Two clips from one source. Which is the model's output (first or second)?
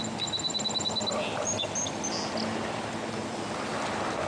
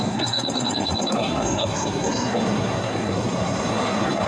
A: second